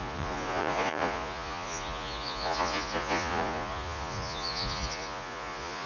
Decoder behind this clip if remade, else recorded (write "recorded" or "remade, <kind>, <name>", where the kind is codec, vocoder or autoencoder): remade, vocoder, Vocos